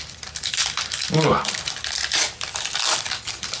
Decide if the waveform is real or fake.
fake